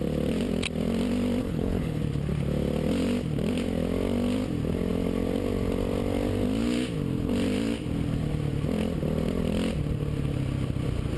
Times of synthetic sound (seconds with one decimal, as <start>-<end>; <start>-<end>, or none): 1.4-2.0